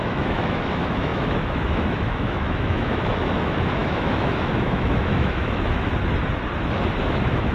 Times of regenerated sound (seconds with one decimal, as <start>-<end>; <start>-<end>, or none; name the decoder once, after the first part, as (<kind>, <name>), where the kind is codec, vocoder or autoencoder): 0.0-5.9 (autoencoder, DAC-VAE); 7.0-7.5